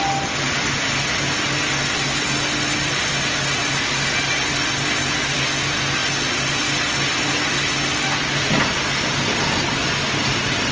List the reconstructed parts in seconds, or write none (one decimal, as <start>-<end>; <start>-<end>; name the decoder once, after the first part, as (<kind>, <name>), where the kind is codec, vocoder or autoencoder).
none